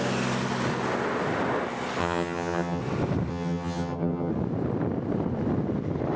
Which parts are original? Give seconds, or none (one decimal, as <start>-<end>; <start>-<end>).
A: 0.0-2.0; 2.8-3.3; 4.3-6.2